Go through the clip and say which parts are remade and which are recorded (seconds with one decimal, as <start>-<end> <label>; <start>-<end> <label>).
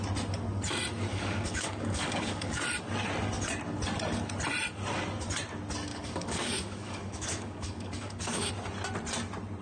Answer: 0.0-1.1 recorded; 1.1-2.6 remade; 2.6-5.9 recorded; 5.9-8.5 remade; 8.5-9.6 recorded